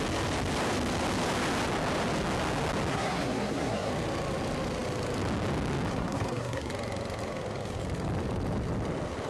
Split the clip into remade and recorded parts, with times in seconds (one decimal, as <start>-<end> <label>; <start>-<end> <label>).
0.0-2.9 recorded; 2.9-3.9 remade; 3.9-5.9 recorded; 5.9-6.7 remade; 6.7-9.3 recorded

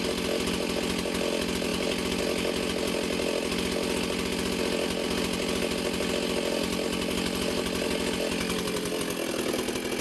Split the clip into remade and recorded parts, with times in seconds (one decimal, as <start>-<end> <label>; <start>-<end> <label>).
0.0-10.0 recorded

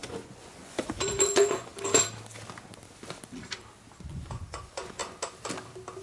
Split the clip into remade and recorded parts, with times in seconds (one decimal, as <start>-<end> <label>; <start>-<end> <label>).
0.0-1.7 remade; 1.7-4.1 recorded; 4.1-5.0 remade; 5.0-6.0 recorded

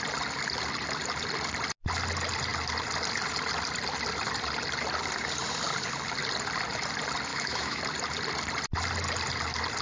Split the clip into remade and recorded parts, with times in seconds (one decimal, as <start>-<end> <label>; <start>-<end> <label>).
0.0-7.3 recorded; 7.3-7.8 remade; 7.8-9.8 recorded

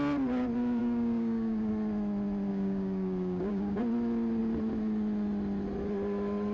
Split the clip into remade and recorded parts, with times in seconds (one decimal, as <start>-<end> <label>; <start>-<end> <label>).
0.0-0.8 recorded; 0.8-1.7 remade; 1.7-2.5 recorded; 2.5-3.8 remade; 3.8-6.5 recorded

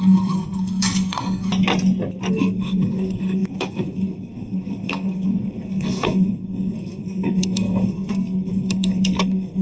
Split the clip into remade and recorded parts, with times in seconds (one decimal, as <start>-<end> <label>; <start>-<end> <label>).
0.0-1.5 remade; 1.5-2.3 recorded; 2.3-9.6 remade

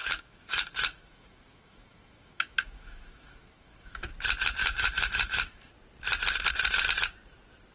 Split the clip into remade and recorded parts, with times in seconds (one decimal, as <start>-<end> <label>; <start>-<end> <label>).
0.0-4.1 remade; 4.1-4.6 recorded; 4.6-5.7 remade; 5.7-7.7 recorded

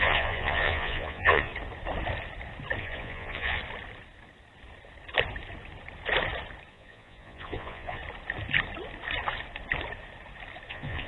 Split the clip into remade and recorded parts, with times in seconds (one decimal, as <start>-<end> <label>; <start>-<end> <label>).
0.0-1.5 remade; 1.5-2.8 recorded; 2.8-3.6 remade; 3.6-6.7 recorded; 6.7-8.0 remade; 8.0-10.7 recorded; 10.7-11.1 remade